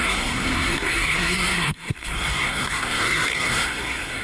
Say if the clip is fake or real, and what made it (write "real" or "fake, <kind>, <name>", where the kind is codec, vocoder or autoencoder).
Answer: fake, codec, SNAC